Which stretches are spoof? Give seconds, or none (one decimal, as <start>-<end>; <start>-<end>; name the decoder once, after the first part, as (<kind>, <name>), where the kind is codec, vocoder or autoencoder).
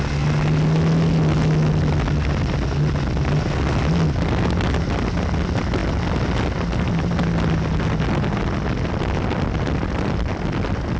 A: none